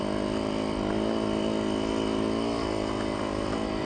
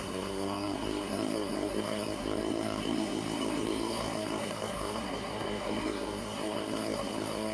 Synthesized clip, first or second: second